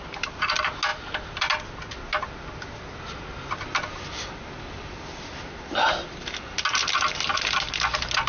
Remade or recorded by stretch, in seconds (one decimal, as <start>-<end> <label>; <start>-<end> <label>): 0.0-8.3 recorded